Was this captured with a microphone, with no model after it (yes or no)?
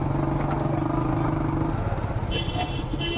yes